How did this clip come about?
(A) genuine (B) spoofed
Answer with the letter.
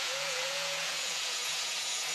B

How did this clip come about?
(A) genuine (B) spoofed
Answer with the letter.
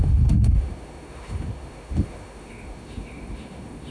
B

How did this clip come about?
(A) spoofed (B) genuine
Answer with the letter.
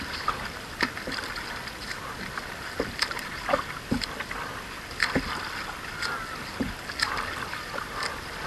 B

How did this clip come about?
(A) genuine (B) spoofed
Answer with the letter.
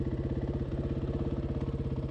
A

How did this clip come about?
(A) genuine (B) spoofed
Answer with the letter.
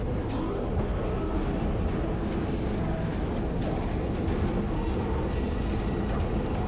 A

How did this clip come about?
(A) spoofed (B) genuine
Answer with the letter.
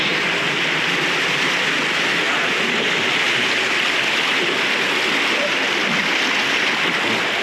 B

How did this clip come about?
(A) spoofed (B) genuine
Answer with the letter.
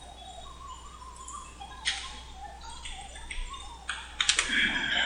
B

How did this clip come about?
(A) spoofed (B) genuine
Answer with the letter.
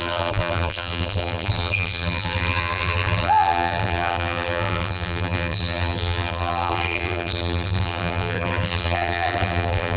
A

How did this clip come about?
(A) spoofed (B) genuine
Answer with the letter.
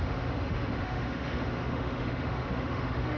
A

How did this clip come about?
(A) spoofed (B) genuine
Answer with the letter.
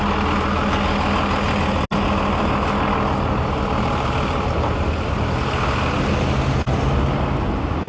B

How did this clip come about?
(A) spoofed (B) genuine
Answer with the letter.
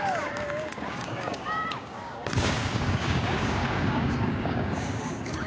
A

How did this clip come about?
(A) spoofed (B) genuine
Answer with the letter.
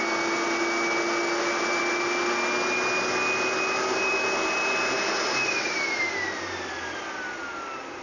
B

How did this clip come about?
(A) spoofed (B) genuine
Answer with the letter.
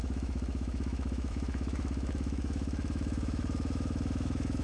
A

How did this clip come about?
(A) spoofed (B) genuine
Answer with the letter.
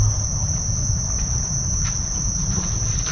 B